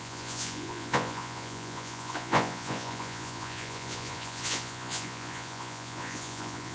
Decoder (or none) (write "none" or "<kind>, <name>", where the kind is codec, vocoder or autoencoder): vocoder, Vocos